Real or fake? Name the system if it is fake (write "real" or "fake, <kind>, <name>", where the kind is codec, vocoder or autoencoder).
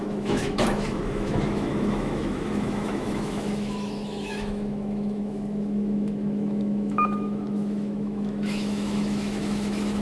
fake, autoencoder, DAC-VAE